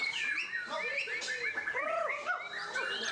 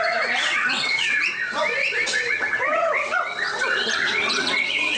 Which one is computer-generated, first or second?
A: second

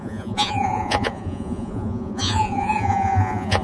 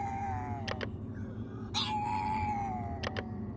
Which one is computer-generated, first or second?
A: first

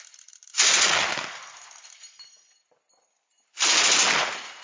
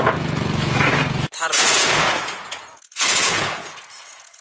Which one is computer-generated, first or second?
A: second